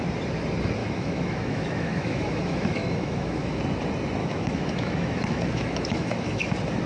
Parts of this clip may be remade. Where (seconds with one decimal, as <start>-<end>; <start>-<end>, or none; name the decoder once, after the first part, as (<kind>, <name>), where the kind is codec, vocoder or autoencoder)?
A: 0.8-3.6 (autoencoder, DAC-VAE); 4.2-6.5